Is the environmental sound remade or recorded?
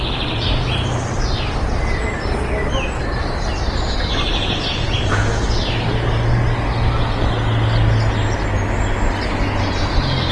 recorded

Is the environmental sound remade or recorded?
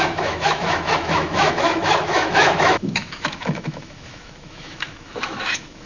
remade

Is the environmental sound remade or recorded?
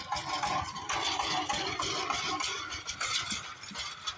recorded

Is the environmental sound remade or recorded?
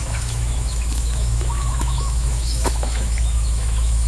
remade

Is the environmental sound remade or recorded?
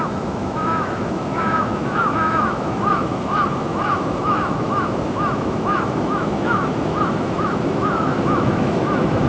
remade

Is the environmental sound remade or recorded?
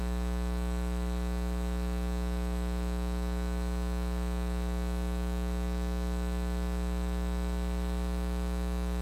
remade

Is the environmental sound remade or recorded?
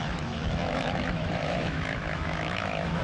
remade